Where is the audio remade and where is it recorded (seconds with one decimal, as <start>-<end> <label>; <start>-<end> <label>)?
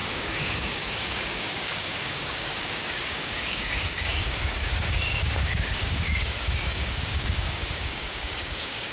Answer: 0.0-8.9 remade